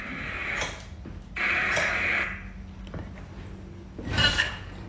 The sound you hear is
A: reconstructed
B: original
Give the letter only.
B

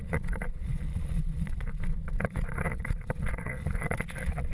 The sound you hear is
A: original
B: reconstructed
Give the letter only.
B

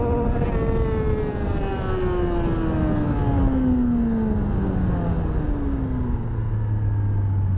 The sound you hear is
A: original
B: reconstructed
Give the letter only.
A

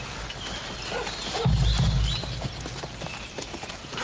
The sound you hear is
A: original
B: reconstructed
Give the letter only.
A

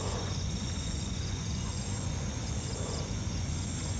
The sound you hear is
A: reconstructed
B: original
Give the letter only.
A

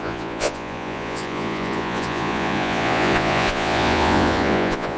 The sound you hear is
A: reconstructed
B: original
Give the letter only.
A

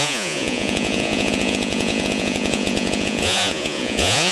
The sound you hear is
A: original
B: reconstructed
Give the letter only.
B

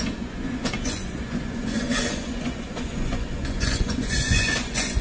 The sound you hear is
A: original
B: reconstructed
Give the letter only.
B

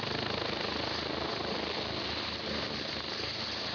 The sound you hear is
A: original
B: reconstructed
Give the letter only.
A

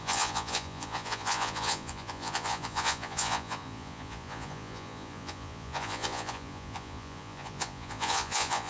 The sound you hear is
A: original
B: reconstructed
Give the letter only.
B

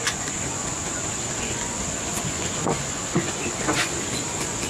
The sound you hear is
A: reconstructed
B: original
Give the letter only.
A